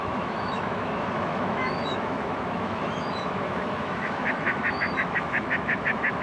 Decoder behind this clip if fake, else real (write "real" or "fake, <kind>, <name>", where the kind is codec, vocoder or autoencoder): fake, autoencoder, DAC-VAE